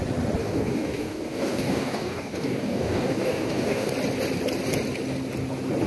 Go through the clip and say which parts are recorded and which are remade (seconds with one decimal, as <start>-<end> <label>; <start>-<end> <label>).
0.0-0.4 recorded; 0.4-3.9 remade; 3.9-5.9 recorded